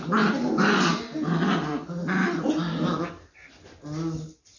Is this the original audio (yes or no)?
yes